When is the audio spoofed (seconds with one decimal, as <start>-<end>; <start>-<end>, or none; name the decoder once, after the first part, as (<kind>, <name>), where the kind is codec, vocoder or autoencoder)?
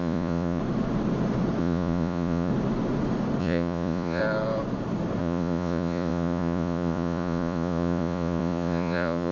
0.0-0.6 (vocoder, Vocos); 1.6-2.5; 3.4-4.2; 5.2-9.3